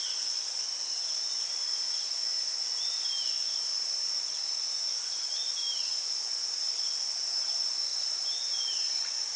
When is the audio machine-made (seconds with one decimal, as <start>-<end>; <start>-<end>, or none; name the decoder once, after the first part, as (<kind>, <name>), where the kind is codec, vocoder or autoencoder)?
none